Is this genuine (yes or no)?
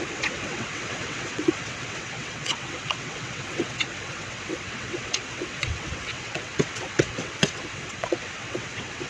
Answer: no